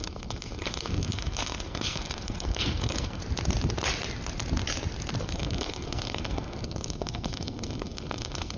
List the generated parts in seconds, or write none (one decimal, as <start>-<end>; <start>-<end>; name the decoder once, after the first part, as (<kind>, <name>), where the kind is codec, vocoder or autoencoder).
0.0-3.2 (codec, SNAC); 5.2-8.6